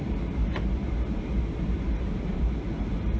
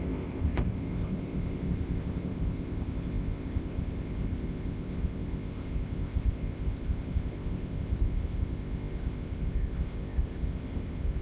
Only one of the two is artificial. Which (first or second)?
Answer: second